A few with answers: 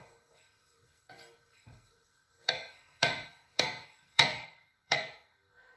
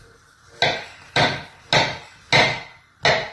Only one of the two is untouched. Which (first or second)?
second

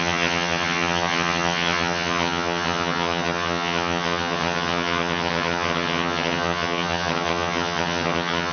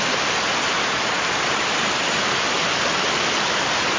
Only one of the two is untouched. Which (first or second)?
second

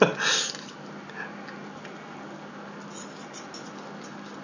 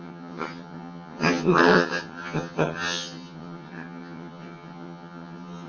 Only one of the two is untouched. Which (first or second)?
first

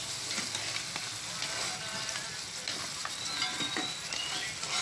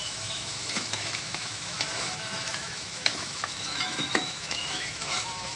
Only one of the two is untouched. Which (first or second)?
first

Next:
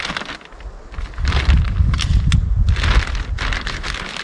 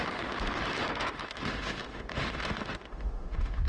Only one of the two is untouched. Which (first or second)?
first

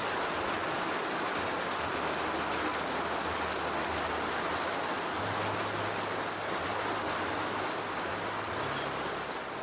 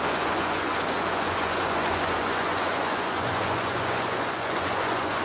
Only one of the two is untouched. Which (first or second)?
first